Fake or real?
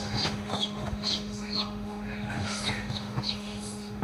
fake